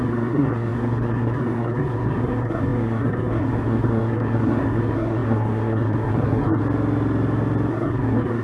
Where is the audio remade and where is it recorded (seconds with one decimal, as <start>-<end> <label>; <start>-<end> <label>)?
0.0-6.6 remade; 6.6-7.7 recorded; 7.7-8.4 remade